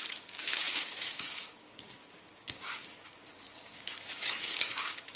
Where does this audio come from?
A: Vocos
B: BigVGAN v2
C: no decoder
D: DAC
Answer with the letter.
D